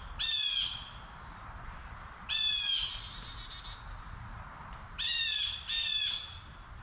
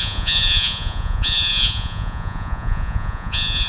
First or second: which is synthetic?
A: second